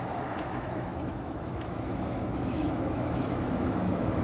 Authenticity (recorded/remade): remade